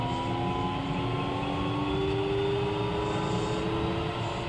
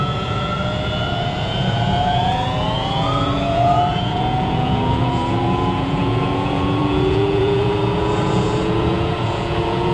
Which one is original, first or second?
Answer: first